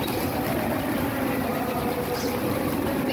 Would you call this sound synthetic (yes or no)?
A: yes